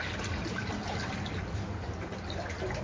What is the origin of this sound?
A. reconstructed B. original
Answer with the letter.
B